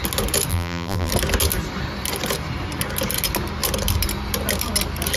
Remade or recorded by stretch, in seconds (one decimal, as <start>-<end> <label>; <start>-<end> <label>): 0.0-0.5 recorded; 0.5-1.1 remade; 1.1-5.2 recorded